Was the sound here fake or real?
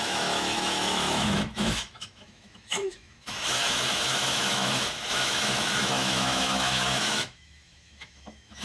fake